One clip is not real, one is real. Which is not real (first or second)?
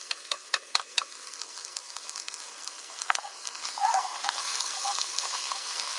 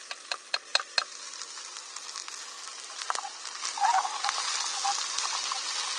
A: first